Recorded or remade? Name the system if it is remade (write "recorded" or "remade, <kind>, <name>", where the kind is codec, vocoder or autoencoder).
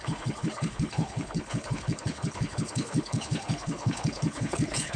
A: remade, codec, HILCodec